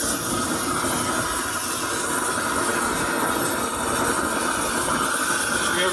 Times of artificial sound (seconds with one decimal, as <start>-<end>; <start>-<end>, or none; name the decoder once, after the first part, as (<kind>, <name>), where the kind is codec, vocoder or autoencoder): none